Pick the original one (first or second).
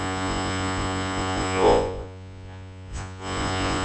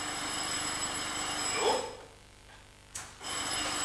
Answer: second